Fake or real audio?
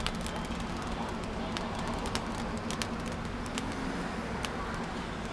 real